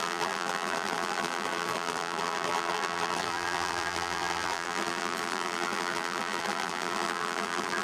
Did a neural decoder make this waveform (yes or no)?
yes